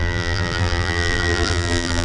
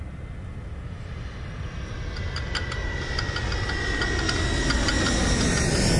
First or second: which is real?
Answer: second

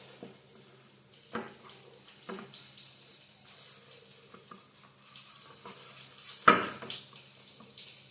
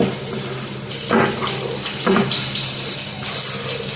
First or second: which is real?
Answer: first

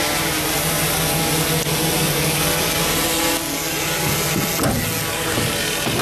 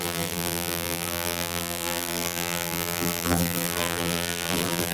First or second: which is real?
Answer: first